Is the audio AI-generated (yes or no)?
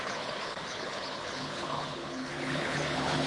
yes